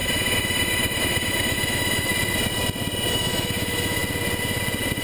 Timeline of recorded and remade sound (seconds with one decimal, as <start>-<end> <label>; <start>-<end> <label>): 0.0-2.1 remade; 2.1-3.1 recorded; 3.1-4.0 remade; 4.0-5.0 recorded